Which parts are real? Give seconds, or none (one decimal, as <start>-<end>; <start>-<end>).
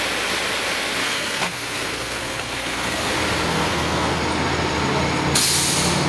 0.0-1.0; 3.1-3.5; 4.2-6.1